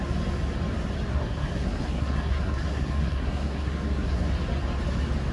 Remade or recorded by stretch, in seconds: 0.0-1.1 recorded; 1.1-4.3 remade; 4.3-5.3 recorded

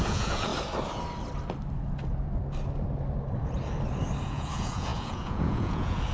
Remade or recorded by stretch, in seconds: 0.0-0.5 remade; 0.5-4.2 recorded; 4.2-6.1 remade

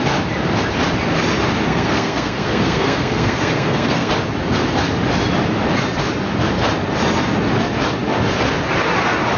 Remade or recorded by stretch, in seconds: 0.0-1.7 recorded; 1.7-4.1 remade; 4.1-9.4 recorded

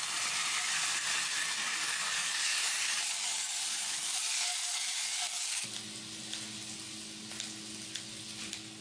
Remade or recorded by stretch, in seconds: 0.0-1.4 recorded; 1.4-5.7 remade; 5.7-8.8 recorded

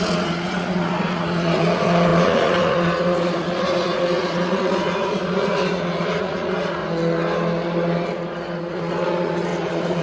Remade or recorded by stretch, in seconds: 0.0-6.8 remade; 6.8-8.6 recorded; 8.6-10.0 remade

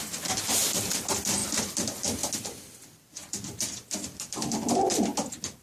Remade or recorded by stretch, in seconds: 0.0-1.4 recorded; 1.4-2.2 remade; 2.2-3.2 recorded; 3.2-5.0 remade; 5.0-5.6 recorded

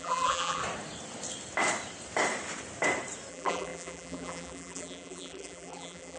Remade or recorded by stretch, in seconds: 0.0-0.6 remade; 0.6-3.3 recorded; 3.3-6.2 remade